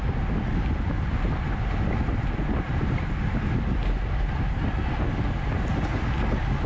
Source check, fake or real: real